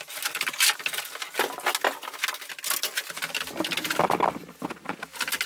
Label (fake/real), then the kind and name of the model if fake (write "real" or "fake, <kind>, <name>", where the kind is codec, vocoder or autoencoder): real